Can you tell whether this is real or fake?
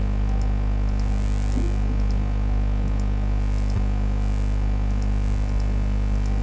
real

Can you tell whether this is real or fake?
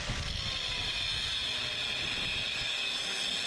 real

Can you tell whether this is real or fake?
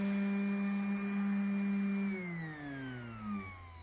real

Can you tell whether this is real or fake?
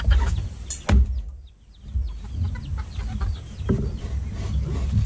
real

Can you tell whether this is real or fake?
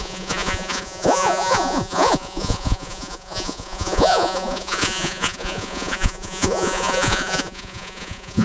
fake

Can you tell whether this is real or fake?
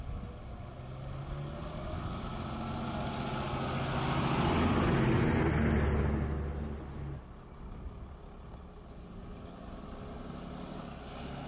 real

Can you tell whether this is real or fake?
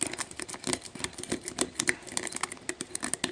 real